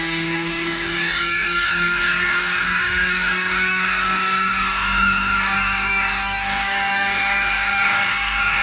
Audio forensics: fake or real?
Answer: fake